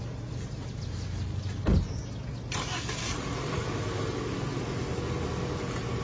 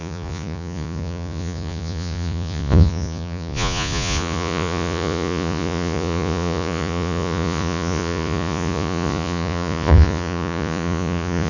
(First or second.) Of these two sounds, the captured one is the first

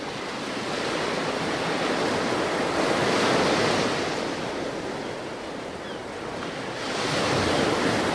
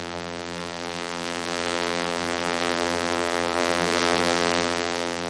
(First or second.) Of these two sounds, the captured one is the first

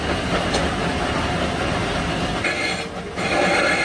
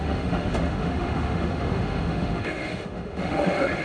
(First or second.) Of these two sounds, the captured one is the first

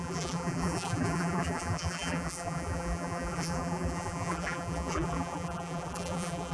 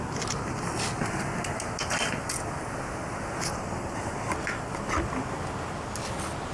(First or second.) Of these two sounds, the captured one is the second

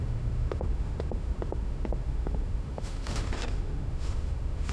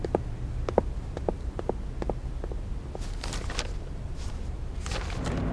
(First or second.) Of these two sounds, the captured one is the second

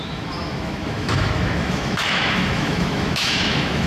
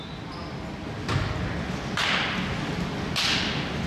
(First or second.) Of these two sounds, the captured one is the second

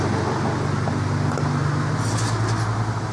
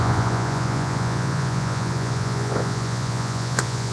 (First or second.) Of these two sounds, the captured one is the first